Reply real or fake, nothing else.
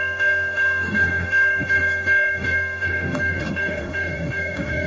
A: fake